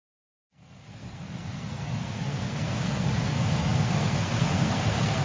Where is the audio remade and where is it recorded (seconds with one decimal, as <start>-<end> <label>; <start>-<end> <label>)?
0.0-5.2 remade